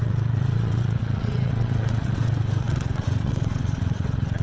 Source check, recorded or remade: remade